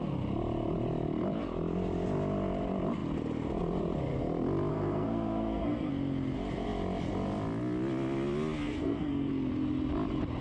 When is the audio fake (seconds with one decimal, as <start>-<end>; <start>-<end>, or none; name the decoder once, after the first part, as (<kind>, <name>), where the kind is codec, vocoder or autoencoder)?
4.7-5.9 (codec, SNAC); 8.7-9.3